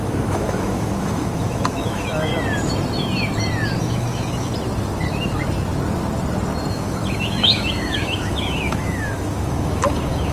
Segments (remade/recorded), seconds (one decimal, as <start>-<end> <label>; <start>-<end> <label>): 0.0-2.3 remade; 2.3-3.8 recorded; 3.8-4.5 remade; 4.5-6.7 recorded; 6.7-10.3 remade